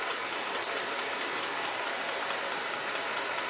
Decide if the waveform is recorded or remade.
recorded